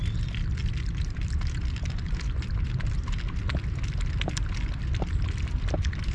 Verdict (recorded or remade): recorded